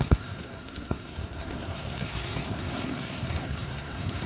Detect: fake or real fake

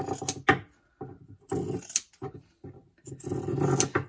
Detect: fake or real real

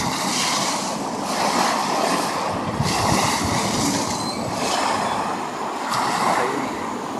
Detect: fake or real real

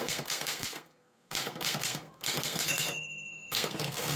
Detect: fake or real fake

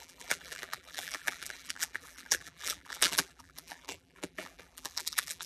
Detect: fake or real fake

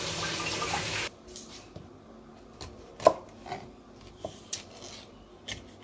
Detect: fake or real real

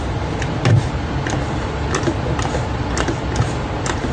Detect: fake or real real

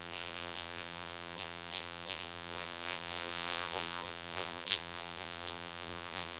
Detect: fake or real fake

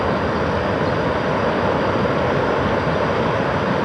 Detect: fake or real real